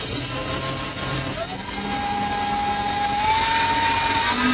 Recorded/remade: recorded